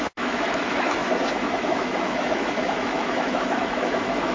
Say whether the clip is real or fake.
fake